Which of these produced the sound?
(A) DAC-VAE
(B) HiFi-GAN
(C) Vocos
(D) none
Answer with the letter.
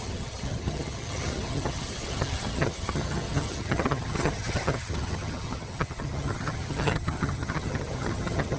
B